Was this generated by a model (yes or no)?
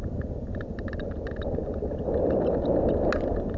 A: no